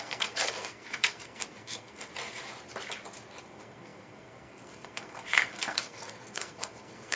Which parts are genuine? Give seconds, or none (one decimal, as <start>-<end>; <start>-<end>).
2.1-3.4